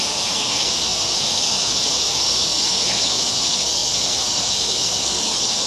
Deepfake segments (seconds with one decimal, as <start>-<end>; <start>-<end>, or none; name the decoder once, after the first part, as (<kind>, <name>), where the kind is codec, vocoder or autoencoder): 0.0-5.7 (codec, SNAC)